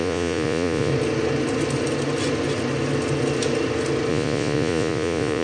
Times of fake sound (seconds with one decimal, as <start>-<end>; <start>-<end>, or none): 0.0-0.9; 4.1-5.4